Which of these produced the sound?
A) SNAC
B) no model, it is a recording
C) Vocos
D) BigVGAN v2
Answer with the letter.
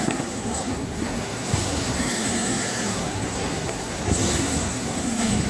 A